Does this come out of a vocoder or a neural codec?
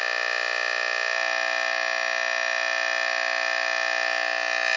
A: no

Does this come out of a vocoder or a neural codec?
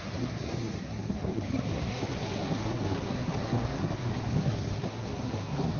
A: yes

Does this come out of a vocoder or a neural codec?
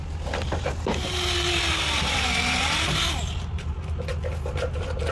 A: no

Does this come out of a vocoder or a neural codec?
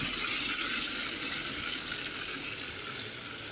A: no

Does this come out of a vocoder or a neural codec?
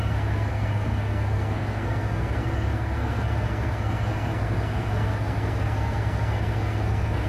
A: yes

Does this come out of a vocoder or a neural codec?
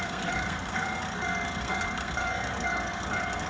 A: yes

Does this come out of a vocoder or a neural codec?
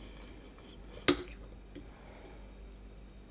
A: no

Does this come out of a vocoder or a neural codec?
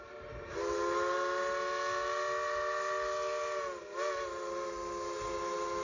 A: no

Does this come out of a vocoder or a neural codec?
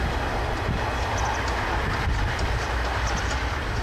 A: no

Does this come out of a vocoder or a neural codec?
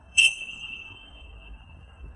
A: yes